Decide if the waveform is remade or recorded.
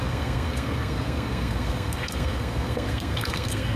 remade